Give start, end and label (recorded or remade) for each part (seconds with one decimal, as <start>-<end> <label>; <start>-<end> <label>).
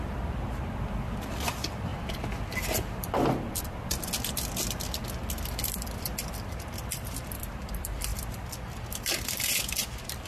0.0-1.9 remade; 1.9-4.3 recorded; 4.3-8.1 remade; 8.1-9.0 recorded; 9.0-10.3 remade